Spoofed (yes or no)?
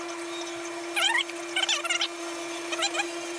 no